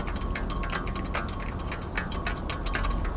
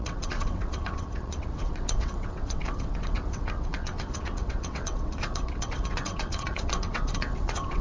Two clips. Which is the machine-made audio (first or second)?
second